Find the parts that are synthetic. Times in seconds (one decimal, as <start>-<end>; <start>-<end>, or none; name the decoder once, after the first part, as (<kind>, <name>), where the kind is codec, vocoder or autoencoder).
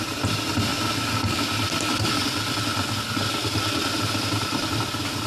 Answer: 0.0-0.7 (vocoder, BigVGAN v2); 3.9-5.3